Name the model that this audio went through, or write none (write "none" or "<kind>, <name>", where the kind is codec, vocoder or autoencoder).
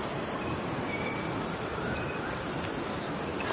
none